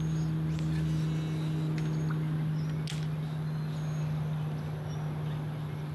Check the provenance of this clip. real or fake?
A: real